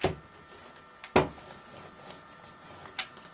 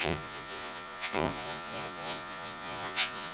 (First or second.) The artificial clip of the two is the second